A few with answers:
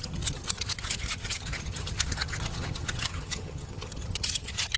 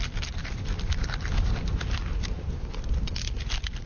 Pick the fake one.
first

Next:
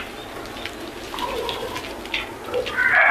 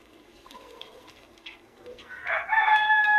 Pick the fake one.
second